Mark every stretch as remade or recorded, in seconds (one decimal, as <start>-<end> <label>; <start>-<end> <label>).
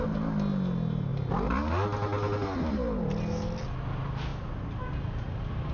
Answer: 0.0-5.7 recorded